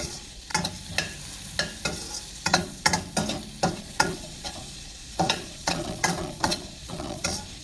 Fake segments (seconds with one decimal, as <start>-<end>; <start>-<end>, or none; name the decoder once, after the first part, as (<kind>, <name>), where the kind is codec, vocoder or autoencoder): 0.0-0.5 (vocoder, Vocos); 2.3-2.9; 3.7-7.6